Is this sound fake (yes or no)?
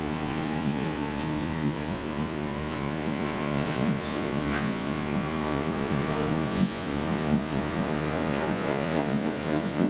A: yes